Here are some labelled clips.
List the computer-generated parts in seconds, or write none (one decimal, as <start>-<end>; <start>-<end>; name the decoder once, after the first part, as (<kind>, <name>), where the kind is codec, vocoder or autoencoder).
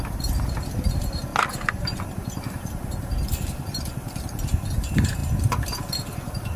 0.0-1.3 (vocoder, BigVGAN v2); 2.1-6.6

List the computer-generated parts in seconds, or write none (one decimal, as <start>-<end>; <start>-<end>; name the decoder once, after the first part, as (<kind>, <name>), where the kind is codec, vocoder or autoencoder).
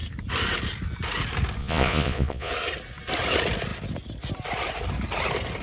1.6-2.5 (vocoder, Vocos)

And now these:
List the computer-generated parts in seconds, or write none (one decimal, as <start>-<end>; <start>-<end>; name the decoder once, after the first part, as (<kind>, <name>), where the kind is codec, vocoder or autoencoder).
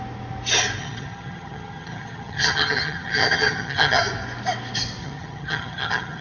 0.8-4.0 (vocoder, HiFi-GAN); 5.0-6.2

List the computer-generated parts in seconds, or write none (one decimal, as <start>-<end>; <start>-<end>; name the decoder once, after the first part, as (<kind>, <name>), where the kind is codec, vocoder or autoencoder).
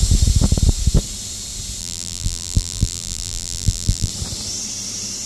1.8-4.1 (vocoder, BigVGAN v2)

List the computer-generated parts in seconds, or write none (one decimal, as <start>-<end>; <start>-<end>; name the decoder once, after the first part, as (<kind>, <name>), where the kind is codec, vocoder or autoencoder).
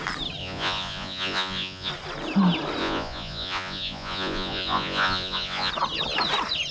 0.4-1.9 (vocoder, Vocos); 2.8-5.7